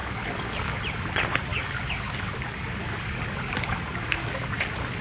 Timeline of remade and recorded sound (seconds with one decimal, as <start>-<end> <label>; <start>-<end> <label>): 0.0-0.8 remade; 0.8-1.5 recorded; 1.5-4.5 remade; 4.5-5.0 recorded